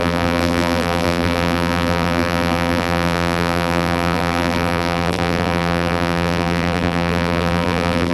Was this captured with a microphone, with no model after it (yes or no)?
no